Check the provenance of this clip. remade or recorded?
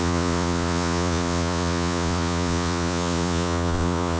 remade